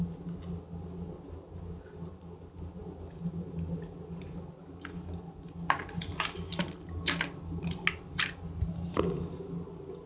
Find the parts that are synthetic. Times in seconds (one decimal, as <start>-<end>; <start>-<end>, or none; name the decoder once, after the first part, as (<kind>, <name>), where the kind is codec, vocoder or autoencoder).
none